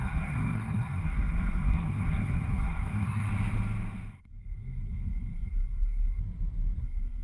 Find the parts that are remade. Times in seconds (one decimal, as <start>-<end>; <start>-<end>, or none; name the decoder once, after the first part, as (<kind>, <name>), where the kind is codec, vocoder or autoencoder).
0.0-3.3 (codec, SNAC); 4.1-6.2; 6.8-7.2